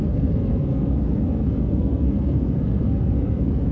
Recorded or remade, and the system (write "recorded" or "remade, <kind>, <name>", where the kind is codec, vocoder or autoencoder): remade, codec, SNAC